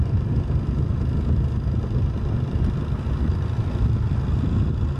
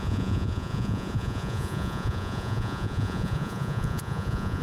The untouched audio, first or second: first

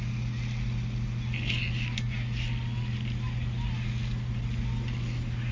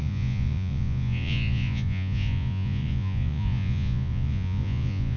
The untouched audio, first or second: first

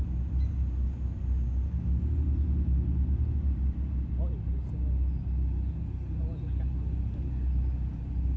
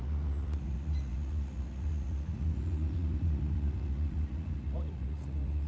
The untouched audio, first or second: first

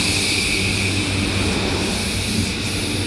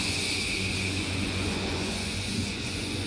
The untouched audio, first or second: first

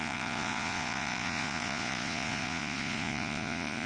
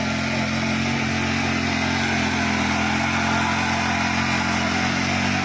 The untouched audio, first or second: second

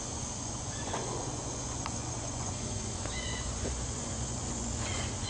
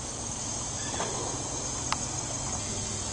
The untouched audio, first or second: second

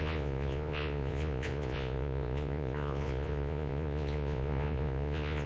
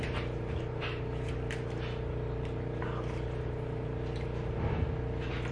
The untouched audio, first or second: second